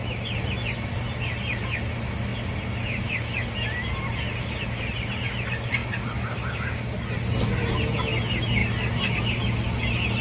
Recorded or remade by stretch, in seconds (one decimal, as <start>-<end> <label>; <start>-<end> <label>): 0.0-10.2 recorded